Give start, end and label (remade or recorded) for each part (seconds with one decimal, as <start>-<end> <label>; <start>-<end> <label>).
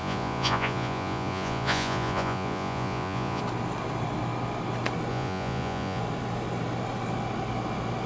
0.0-3.4 remade; 3.4-5.1 recorded; 5.1-6.0 remade; 6.0-8.1 recorded